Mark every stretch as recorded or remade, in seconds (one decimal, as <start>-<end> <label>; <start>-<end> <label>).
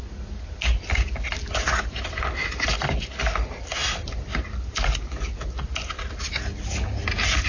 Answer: 0.0-7.5 recorded